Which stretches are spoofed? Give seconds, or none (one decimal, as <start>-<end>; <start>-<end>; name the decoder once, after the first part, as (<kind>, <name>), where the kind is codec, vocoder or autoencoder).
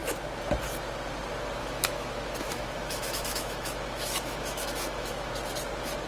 1.6-5.3 (autoencoder, DAC-VAE)